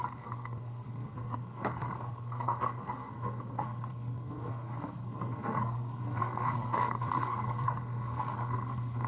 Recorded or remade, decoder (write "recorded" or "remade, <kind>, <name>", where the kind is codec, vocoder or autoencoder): remade, codec, SNAC